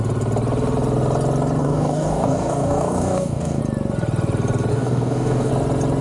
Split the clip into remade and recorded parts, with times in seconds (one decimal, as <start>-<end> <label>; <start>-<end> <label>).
0.0-1.6 recorded; 1.6-3.6 remade; 3.6-4.7 recorded; 4.7-5.5 remade; 5.5-6.0 recorded